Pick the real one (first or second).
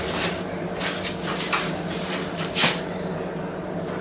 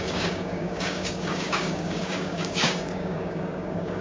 first